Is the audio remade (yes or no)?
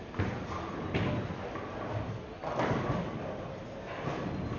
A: no